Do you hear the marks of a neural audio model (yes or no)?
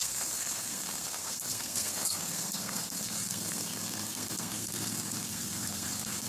yes